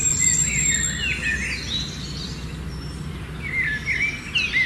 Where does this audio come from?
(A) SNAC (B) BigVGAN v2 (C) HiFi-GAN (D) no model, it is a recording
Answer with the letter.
D